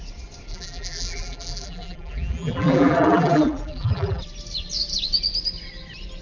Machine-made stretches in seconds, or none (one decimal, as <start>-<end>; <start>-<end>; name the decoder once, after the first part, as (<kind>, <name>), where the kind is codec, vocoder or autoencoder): 0.5-4.2 (vocoder, BigVGAN v2)

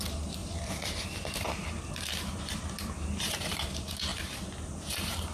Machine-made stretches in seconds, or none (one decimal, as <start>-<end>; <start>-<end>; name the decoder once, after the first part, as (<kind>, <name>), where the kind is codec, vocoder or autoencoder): 0.0-4.1 (vocoder, BigVGAN v2); 4.6-5.3

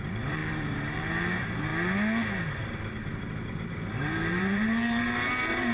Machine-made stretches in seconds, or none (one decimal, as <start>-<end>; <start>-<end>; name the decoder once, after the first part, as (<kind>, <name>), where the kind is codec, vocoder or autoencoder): 0.0-1.7 (vocoder, BigVGAN v2); 2.4-5.7